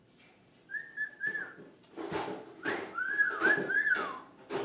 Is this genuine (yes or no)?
yes